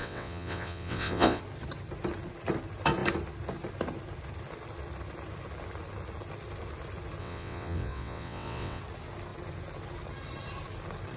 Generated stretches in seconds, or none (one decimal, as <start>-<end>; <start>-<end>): 0.0-1.4; 7.2-8.8